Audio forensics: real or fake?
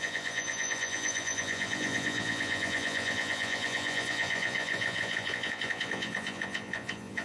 fake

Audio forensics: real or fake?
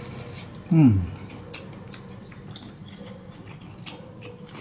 real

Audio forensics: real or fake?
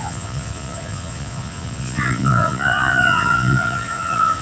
fake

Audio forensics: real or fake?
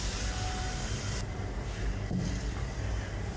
real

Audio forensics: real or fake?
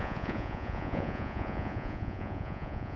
fake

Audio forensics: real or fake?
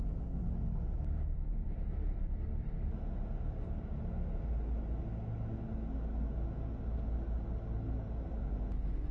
real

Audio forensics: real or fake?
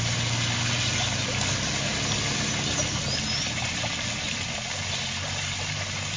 real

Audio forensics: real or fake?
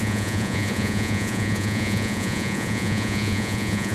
fake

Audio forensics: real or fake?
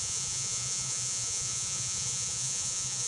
fake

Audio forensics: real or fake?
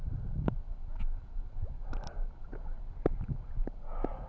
real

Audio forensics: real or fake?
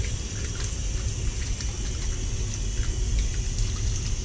real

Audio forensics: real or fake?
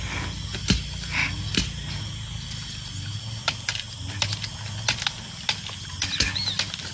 real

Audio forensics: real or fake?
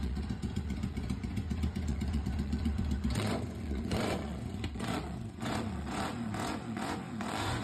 fake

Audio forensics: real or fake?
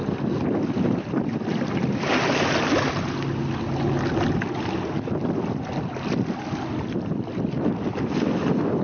real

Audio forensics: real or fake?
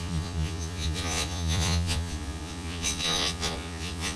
fake